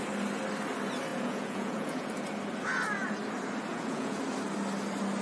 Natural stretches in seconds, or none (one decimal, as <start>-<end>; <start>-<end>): 0.0-1.1; 2.1-3.7; 4.2-5.2